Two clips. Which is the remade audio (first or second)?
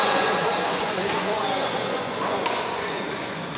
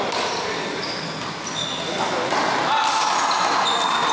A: first